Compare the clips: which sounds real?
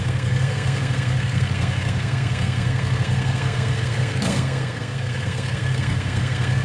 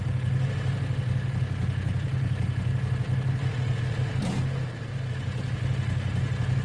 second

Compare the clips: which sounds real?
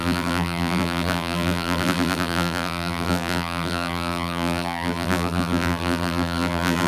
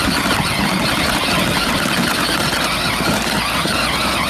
second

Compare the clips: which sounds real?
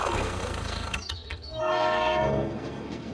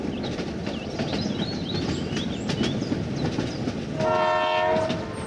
second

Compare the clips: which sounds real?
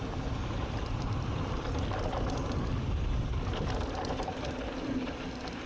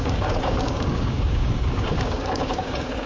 first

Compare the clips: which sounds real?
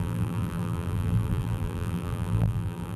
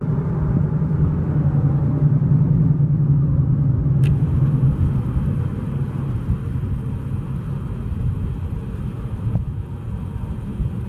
second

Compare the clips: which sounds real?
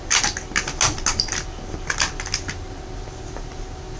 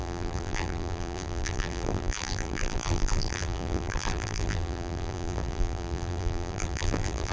first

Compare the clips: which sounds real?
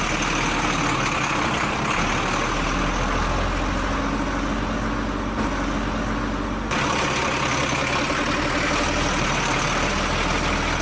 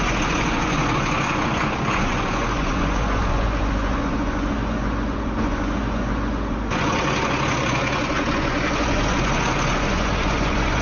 first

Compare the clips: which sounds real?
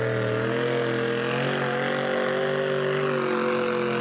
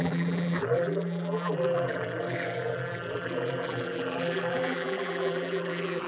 first